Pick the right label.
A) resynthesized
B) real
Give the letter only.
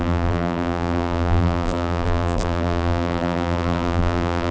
A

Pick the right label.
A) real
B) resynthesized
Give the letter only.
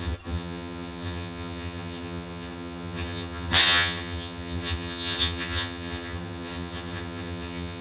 B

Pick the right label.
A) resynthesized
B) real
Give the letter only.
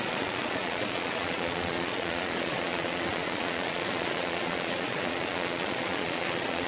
A